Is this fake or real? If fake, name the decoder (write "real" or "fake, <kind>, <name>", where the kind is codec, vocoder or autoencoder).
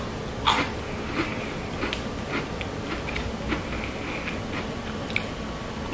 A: real